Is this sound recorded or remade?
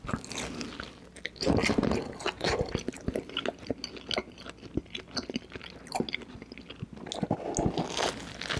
recorded